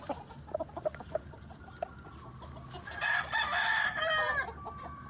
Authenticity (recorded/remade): recorded